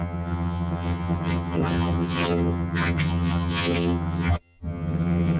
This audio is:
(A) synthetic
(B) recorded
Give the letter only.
A